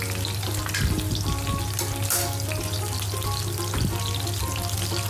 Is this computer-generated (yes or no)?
no